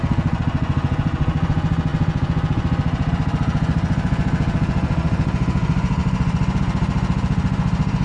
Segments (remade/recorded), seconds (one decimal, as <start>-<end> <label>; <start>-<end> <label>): 0.0-8.0 remade